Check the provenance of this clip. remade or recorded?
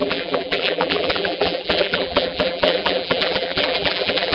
remade